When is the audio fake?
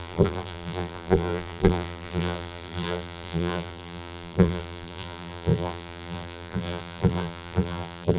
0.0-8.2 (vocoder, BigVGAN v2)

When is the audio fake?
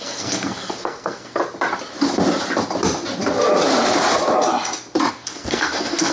0.0-1.4 (codec, SNAC); 5.1-6.1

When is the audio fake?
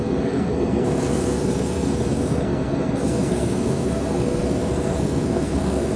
0.0-6.0 (codec, SNAC)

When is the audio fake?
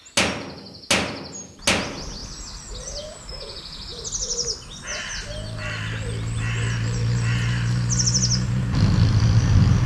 none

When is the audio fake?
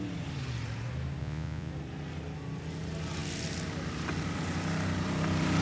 1.2-1.7 (vocoder, Vocos)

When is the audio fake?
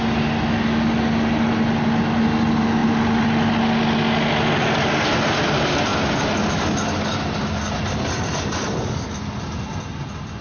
none